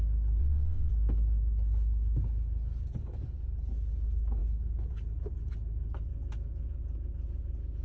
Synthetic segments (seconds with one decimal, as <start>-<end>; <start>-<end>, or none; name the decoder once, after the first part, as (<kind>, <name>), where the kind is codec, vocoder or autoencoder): 0.4-0.9 (vocoder, WaveNeXt)